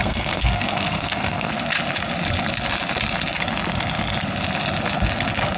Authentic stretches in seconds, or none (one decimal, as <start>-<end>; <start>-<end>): 1.5-5.6